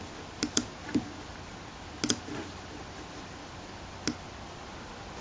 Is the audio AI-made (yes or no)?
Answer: no